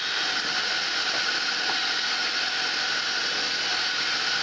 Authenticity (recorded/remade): recorded